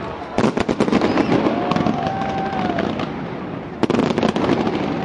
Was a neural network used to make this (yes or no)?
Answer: no